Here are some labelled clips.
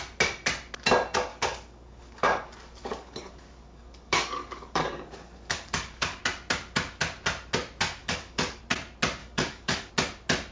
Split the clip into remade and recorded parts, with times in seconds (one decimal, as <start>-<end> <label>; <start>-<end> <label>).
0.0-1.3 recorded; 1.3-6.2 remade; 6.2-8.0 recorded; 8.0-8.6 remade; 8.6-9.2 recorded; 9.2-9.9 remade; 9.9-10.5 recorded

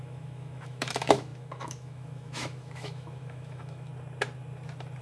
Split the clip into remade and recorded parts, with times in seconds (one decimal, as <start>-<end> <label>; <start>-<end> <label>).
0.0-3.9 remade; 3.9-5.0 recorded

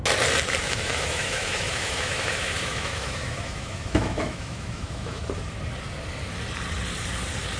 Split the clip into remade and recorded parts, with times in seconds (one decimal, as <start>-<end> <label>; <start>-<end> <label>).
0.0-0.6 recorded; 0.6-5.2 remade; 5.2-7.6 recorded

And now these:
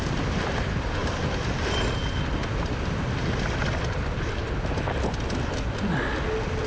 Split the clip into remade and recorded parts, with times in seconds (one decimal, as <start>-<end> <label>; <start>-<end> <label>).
0.0-6.7 recorded